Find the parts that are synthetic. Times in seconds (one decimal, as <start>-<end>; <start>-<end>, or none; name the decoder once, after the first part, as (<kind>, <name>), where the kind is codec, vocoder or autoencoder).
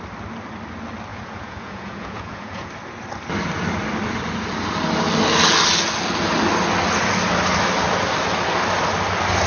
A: 1.1-2.7 (vocoder, Vocos)